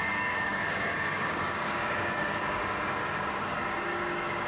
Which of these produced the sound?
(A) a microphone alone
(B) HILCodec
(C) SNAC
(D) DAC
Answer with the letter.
D